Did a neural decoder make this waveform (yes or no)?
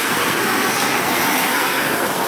yes